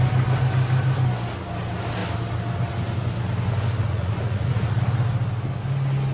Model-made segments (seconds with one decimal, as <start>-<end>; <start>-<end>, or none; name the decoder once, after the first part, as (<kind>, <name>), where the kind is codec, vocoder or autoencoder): 3.8-4.8 (vocoder, Vocos)